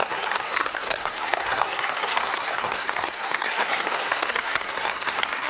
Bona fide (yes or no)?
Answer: no